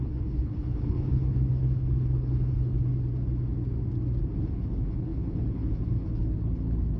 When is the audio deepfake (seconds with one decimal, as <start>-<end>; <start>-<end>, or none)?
0.0-2.9; 4.4-7.0